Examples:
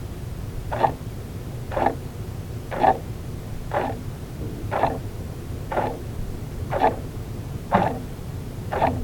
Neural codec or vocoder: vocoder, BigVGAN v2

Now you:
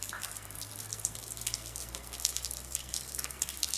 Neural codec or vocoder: codec, SNAC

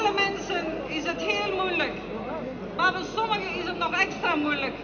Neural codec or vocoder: none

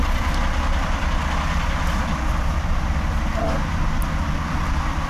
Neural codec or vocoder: vocoder, BigVGAN v2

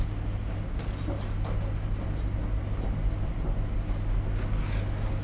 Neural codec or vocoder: none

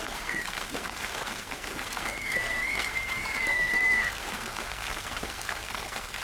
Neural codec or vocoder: codec, SNAC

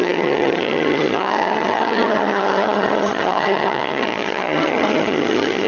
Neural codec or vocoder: vocoder, HiFi-GAN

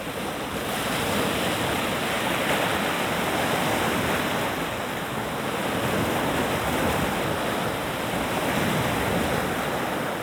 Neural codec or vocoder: none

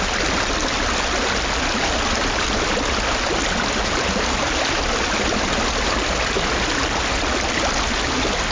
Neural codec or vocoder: none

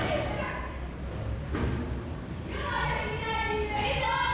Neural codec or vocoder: none